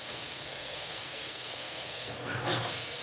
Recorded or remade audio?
remade